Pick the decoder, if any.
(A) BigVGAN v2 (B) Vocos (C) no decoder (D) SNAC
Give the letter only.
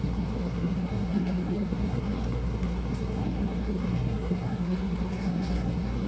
D